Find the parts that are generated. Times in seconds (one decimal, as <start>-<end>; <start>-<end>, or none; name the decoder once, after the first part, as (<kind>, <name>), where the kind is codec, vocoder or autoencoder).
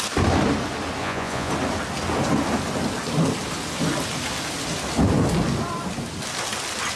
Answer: 1.0-1.5 (vocoder, Vocos)